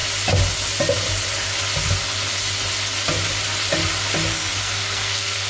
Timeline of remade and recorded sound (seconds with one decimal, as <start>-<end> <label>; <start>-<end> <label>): 0.0-4.3 recorded; 4.3-5.5 remade